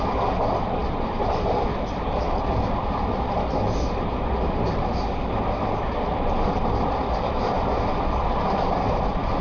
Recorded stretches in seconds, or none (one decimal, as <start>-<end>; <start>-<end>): 0.0-9.4